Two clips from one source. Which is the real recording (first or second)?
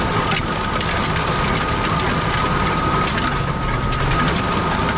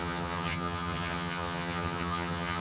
first